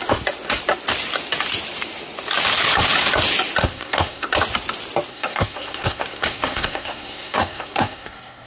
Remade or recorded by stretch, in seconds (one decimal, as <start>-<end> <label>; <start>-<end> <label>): 0.0-3.6 recorded; 3.6-4.3 remade; 4.3-5.1 recorded; 5.1-8.5 remade